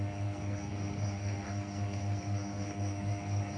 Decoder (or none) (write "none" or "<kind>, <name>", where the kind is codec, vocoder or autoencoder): codec, SNAC